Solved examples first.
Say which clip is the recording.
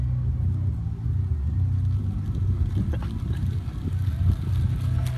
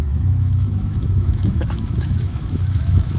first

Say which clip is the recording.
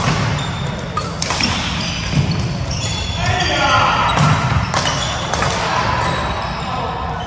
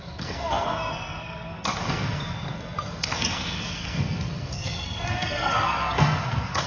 first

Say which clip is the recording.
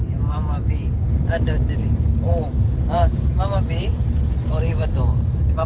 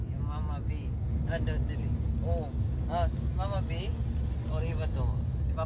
second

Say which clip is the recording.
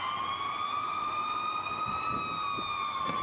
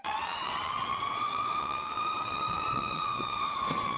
first